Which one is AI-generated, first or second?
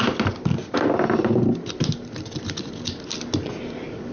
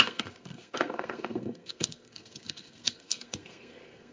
second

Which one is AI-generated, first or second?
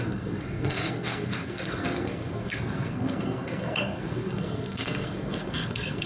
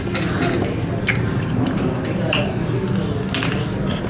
first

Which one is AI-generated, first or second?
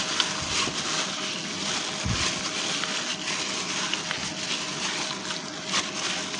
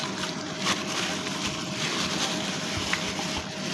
second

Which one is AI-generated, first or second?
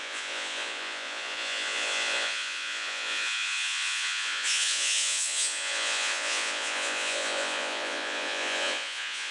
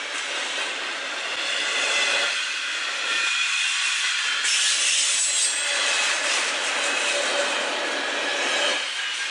first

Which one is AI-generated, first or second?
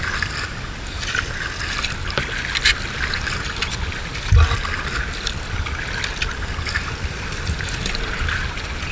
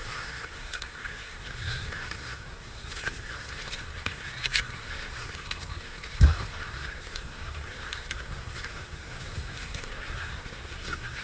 second